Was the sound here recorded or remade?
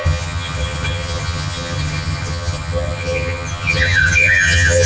remade